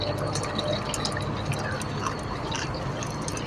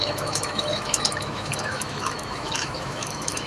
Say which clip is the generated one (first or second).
second